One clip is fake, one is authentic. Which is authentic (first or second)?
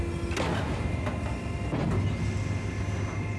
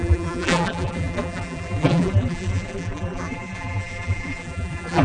first